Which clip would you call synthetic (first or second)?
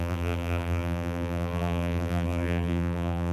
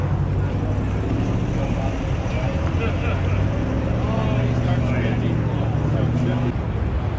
first